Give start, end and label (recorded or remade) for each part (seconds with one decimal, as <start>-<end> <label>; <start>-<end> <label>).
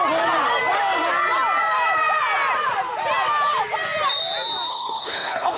0.0-4.7 recorded; 4.7-5.6 remade